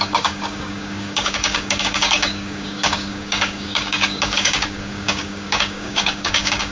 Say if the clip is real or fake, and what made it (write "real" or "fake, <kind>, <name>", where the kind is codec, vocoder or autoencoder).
fake, codec, DAC